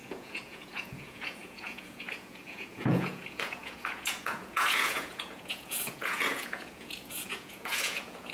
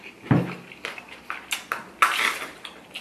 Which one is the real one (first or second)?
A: second